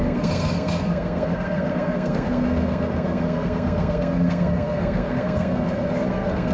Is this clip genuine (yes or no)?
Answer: no